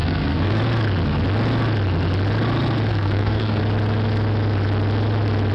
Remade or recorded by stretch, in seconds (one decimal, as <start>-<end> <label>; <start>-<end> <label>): 0.0-0.6 remade; 0.6-2.9 recorded; 2.9-3.6 remade; 3.6-5.5 recorded